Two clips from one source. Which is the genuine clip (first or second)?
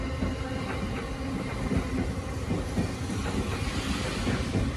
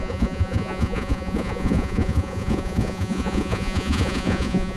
first